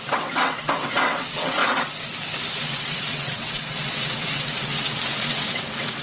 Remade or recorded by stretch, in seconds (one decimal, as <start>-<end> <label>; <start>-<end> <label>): 0.0-1.6 remade; 1.6-2.5 recorded; 2.5-6.0 remade